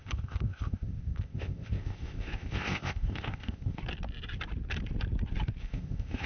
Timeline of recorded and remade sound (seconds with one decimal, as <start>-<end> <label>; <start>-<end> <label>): 0.0-3.8 remade; 3.8-5.6 recorded; 5.6-6.3 remade